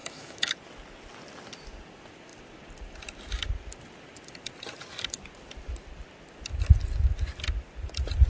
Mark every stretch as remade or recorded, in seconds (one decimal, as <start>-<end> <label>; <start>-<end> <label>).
0.0-0.5 remade; 0.5-8.3 recorded

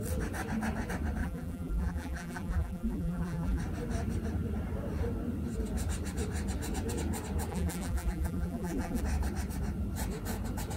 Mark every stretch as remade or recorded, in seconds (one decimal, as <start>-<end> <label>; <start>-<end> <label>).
0.0-1.2 recorded; 1.2-3.6 remade; 3.6-7.5 recorded; 7.5-9.0 remade; 9.0-10.8 recorded

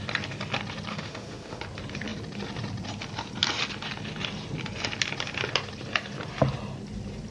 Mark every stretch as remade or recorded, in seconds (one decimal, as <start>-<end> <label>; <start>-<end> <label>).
0.0-0.9 recorded; 0.9-1.6 remade; 1.6-7.3 recorded

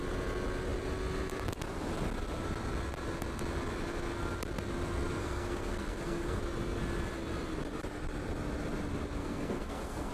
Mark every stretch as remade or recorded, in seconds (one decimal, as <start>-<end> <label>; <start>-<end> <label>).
0.0-5.2 recorded; 5.2-6.4 remade; 6.4-9.2 recorded; 9.2-10.1 remade

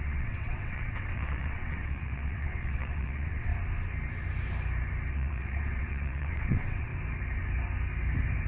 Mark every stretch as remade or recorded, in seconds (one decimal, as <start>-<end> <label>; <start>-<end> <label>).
0.0-3.5 remade; 3.5-5.1 recorded; 5.1-6.9 remade; 6.9-8.5 recorded